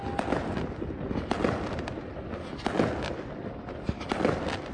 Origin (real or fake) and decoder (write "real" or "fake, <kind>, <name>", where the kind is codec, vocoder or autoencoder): real